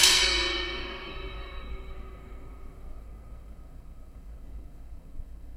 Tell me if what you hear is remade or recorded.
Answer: remade